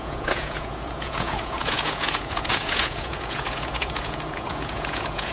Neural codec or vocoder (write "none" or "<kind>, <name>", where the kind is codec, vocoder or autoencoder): vocoder, Vocos